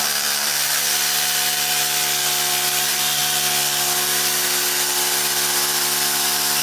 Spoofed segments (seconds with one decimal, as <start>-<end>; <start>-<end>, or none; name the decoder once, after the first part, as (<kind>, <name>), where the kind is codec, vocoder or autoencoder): none